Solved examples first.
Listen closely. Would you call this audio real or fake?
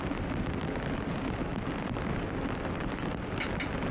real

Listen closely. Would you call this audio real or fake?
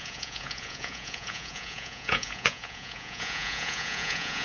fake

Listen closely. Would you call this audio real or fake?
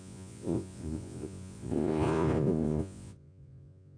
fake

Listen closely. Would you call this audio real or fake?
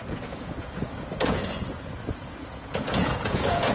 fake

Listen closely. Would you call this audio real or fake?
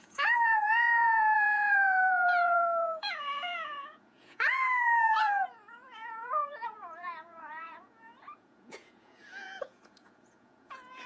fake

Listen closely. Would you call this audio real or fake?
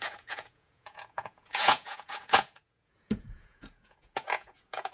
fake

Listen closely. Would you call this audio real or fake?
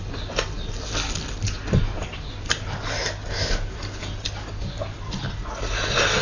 real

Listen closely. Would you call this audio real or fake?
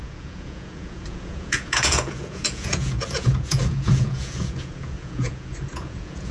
fake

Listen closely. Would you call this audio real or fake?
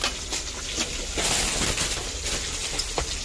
real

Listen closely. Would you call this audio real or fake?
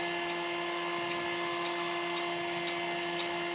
real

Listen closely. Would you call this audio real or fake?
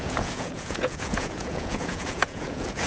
fake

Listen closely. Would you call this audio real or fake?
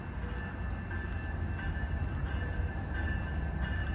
real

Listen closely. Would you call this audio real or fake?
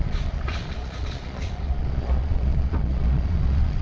fake